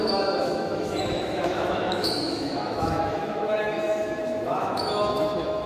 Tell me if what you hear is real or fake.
fake